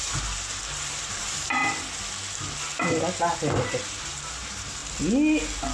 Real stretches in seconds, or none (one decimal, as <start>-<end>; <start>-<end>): 1.6-4.0; 4.8-5.7